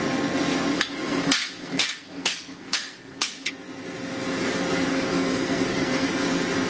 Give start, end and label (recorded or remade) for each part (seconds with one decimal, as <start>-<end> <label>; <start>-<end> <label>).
0.0-0.7 recorded; 0.7-3.5 remade; 3.5-4.9 recorded; 4.9-6.1 remade; 6.1-6.7 recorded